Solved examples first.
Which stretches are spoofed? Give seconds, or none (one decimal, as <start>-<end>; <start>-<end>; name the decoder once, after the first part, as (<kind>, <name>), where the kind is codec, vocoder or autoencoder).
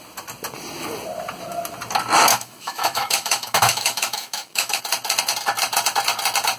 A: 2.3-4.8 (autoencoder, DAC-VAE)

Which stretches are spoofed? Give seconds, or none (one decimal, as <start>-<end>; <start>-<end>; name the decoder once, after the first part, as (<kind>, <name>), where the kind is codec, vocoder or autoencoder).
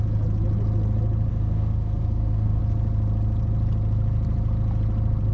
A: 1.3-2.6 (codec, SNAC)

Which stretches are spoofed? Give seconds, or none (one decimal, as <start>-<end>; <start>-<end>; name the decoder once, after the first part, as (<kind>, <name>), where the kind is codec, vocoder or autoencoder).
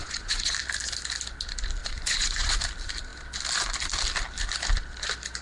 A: 0.0-0.5 (vocoder, Vocos); 1.8-2.6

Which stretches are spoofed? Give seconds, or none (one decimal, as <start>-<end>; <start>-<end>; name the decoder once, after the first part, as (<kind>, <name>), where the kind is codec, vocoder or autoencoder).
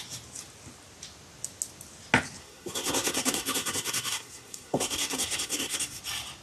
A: 2.4-6.0 (codec, SNAC)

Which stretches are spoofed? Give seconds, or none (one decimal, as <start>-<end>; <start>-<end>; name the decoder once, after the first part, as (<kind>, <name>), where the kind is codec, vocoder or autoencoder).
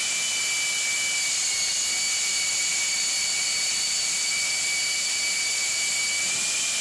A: 2.3-6.0 (vocoder, BigVGAN v2)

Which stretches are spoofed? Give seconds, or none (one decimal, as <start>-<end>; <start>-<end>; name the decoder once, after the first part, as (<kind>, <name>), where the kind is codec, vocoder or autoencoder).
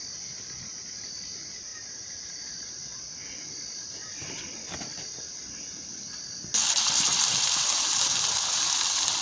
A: 1.7-2.5 (vocoder, BigVGAN v2); 7.1-7.7